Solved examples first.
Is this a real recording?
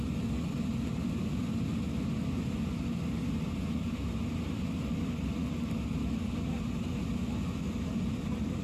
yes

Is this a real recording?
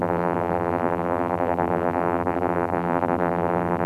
no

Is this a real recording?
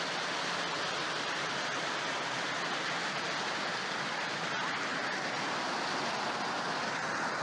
yes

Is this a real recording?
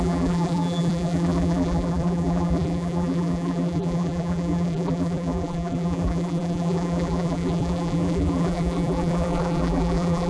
no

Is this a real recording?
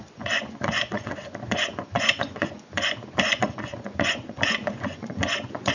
no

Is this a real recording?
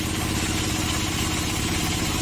yes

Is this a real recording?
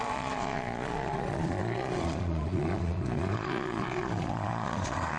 no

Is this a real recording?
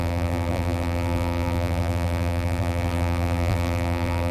no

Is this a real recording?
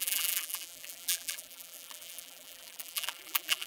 no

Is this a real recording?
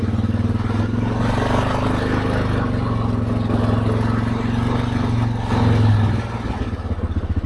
yes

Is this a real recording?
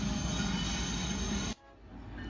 yes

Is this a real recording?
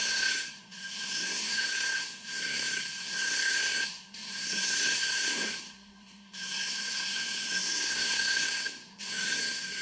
no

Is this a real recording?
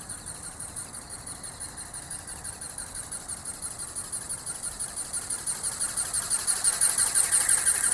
yes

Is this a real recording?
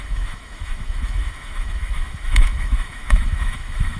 no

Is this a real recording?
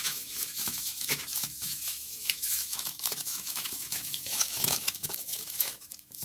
no